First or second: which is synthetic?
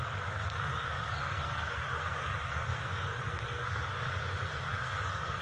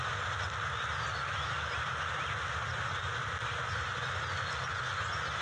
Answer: first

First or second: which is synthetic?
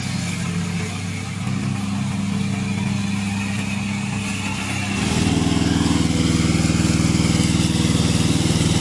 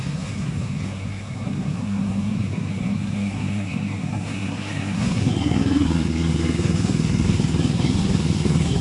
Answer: second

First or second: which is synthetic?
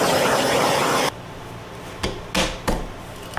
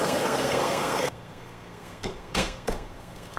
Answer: second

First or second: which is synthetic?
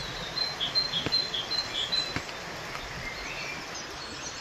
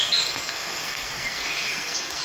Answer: second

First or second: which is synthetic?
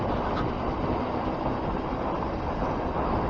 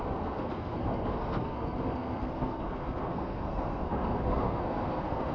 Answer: second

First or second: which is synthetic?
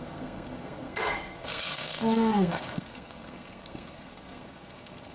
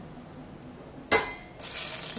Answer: first